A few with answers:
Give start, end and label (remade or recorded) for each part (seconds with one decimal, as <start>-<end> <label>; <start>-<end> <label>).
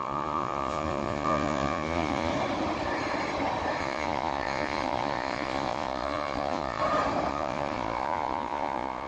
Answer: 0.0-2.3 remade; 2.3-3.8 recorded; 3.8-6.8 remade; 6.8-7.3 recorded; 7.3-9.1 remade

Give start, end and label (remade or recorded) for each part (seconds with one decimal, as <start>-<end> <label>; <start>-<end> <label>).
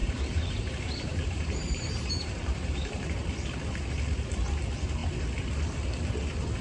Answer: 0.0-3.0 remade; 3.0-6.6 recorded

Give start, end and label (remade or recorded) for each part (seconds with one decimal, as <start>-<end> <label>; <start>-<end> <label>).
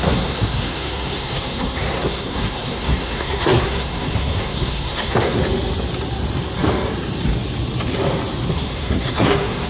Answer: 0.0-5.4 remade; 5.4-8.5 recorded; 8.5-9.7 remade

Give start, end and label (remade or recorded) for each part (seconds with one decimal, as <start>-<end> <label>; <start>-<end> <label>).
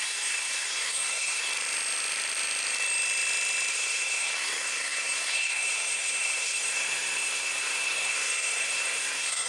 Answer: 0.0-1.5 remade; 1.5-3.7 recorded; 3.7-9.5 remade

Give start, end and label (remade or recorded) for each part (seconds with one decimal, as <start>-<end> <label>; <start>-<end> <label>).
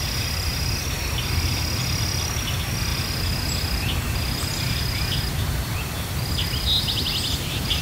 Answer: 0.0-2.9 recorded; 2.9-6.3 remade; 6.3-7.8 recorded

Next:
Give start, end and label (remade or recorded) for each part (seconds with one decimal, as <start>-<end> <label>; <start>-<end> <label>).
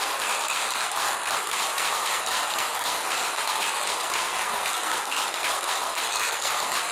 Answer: 0.0-6.9 remade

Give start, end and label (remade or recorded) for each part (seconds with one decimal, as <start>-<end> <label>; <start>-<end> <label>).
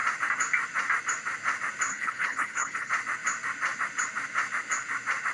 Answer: 0.0-1.9 recorded; 1.9-2.9 remade; 2.9-5.3 recorded